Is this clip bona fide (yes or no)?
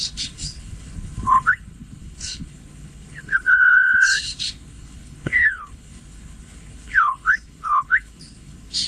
no